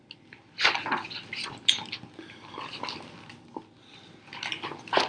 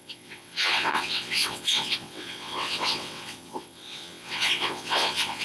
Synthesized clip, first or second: second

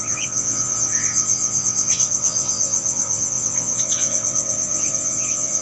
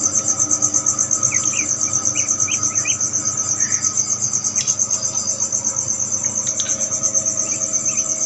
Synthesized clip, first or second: first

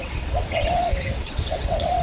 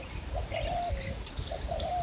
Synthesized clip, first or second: first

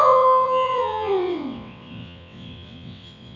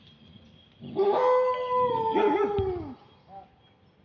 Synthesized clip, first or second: first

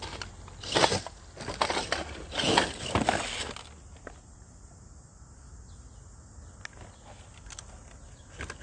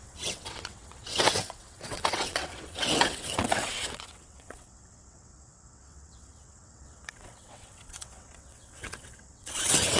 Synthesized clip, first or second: second